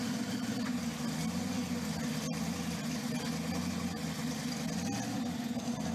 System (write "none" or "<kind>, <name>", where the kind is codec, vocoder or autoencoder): none